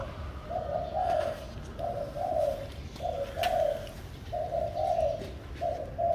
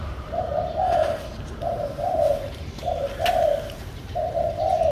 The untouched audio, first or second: first